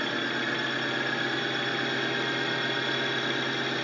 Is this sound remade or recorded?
recorded